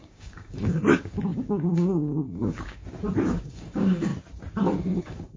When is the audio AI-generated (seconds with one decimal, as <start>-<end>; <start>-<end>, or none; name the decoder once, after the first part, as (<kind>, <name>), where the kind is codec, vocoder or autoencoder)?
0.0-2.8 (codec, DAC); 3.3-4.1; 5.0-5.4